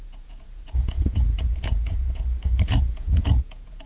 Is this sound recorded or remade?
remade